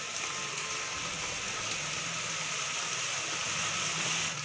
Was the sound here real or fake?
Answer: real